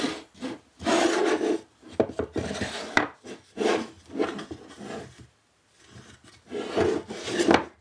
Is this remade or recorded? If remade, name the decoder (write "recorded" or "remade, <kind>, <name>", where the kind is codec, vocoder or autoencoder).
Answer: recorded